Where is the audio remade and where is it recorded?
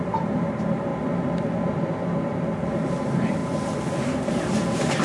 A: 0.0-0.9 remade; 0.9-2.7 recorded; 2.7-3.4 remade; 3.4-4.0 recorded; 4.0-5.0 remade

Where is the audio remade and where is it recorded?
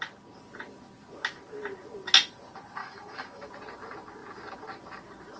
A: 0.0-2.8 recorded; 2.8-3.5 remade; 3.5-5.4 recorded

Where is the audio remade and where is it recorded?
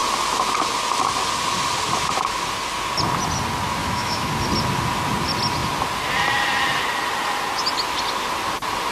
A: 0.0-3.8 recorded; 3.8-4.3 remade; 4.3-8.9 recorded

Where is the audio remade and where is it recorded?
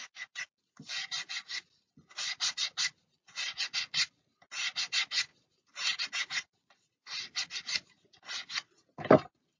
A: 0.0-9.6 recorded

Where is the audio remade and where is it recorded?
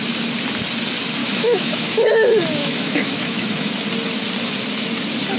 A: 0.0-1.2 recorded; 1.2-2.1 remade; 2.1-2.6 recorded; 2.6-3.7 remade; 3.7-5.4 recorded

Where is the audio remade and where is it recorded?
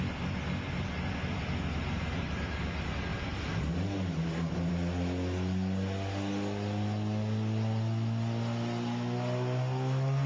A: 0.0-10.3 recorded